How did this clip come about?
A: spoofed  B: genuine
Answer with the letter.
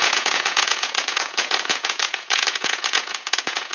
A